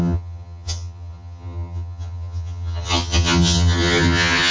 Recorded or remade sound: remade